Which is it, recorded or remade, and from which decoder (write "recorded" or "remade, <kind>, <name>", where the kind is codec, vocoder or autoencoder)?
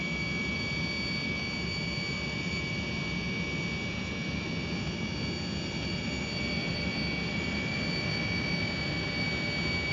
recorded